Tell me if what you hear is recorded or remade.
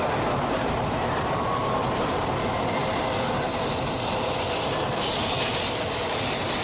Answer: recorded